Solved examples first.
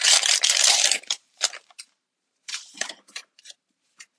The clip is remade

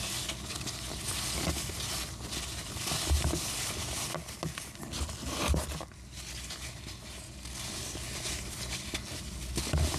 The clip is recorded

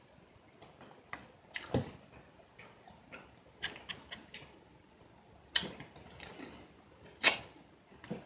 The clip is recorded